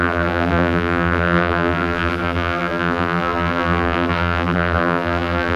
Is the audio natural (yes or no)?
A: no